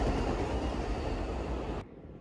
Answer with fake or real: real